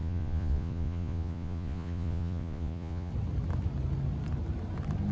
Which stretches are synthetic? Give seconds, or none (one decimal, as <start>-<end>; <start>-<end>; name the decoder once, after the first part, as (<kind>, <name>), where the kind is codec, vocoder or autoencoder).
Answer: 0.0-3.1 (vocoder, Vocos)